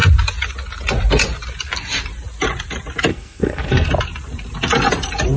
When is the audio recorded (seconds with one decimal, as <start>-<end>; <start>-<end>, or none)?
0.0-3.1; 3.9-5.4